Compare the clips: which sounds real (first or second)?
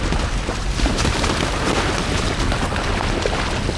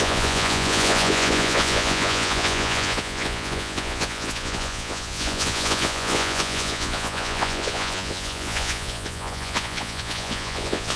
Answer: first